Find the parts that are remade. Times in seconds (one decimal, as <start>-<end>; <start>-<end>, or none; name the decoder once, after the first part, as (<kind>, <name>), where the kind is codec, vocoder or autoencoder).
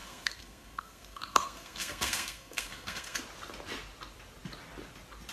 0.0-3.2 (codec, SNAC)